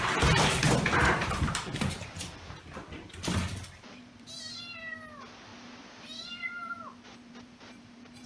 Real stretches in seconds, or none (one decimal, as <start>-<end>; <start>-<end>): 0.0-1.0; 4.4-5.5